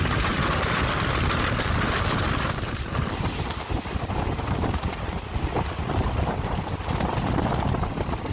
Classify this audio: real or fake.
real